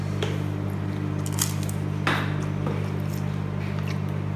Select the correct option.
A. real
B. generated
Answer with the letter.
A